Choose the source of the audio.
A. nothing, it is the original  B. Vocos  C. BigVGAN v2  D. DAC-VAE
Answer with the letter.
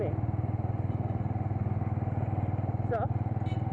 A